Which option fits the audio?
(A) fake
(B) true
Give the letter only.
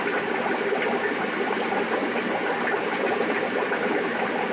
B